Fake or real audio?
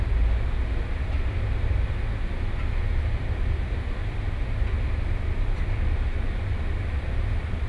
real